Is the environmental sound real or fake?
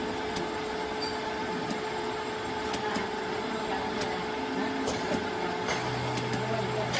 real